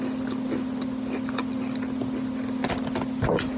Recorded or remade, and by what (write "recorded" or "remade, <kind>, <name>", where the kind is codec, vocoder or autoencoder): recorded